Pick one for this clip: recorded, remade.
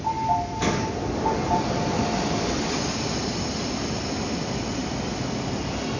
recorded